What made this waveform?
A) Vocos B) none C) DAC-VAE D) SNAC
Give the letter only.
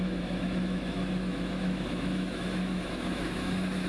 C